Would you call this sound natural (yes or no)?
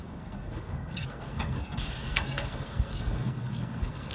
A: no